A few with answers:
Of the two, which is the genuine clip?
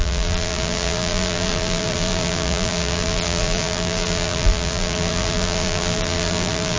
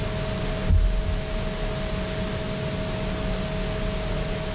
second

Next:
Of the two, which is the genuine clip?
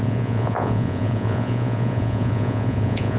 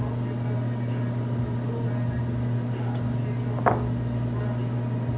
second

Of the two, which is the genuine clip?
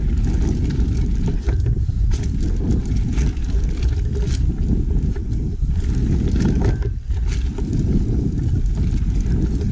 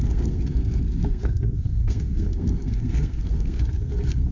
first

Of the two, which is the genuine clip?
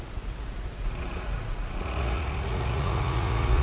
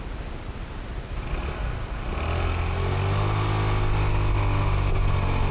second